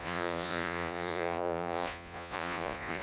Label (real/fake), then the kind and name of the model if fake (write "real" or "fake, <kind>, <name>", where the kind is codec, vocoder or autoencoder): fake, vocoder, Vocos